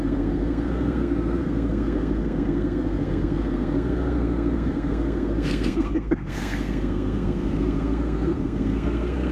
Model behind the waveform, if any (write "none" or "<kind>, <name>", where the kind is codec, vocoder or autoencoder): codec, SNAC